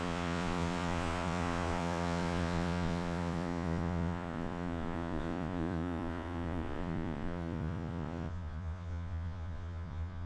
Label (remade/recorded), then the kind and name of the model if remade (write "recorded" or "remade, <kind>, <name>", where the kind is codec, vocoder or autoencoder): remade, vocoder, Vocos